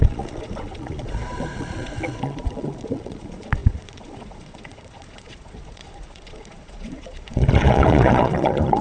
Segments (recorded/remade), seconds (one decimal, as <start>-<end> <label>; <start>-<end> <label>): 0.0-8.8 remade